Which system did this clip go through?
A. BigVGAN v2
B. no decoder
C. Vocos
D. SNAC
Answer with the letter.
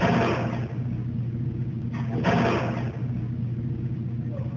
B